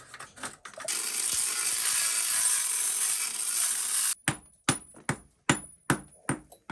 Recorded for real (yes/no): yes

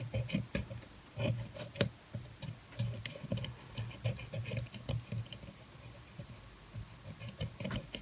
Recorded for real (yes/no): yes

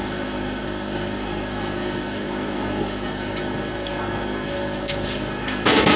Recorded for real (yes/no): no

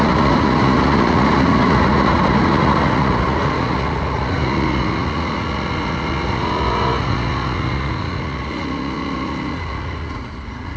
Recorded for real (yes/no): no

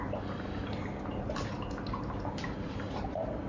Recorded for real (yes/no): yes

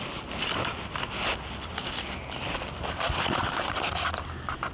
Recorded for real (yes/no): yes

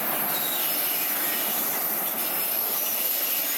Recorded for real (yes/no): yes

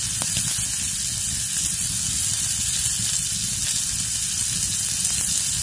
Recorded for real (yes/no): yes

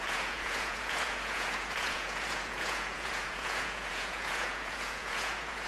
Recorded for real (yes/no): no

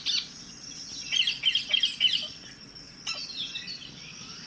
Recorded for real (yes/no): yes